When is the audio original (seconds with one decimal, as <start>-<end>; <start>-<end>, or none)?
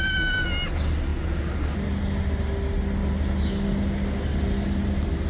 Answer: 0.0-5.3